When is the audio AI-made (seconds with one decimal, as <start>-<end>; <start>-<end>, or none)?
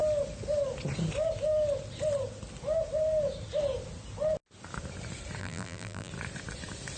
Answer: 5.4-6.1